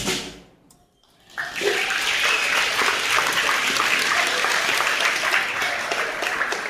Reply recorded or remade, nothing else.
recorded